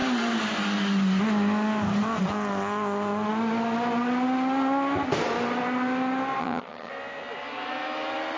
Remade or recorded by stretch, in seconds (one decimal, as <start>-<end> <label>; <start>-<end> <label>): 0.0-6.4 recorded; 6.4-6.9 remade; 6.9-8.4 recorded